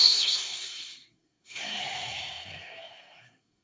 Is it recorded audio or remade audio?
remade